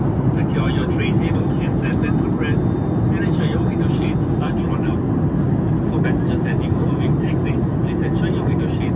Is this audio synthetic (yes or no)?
no